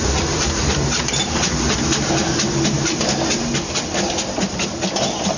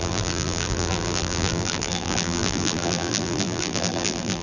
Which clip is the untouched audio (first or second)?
first